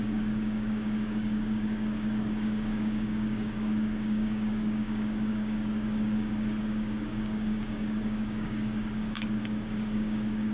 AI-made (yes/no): yes